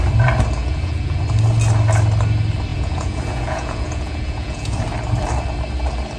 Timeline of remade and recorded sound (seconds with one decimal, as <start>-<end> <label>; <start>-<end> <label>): 0.0-0.6 recorded; 0.6-1.2 remade; 1.2-2.7 recorded; 2.7-4.8 remade; 4.8-6.2 recorded